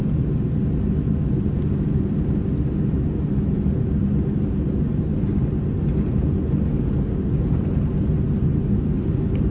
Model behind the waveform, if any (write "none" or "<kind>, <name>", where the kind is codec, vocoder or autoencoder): none